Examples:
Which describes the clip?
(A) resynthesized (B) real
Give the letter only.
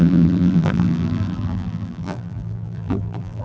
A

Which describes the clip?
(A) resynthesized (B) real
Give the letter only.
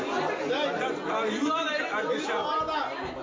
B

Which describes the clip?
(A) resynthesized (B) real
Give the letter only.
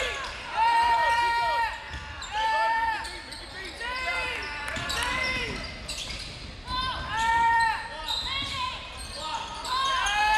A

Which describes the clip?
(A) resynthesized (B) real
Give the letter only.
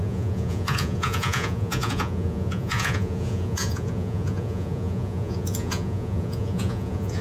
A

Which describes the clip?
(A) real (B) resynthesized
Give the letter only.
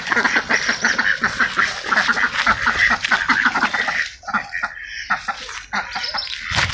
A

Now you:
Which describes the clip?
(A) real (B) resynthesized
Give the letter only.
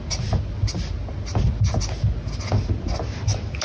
A